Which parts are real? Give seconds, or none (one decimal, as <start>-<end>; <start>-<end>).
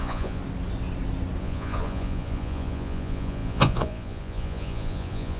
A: 0.4-1.4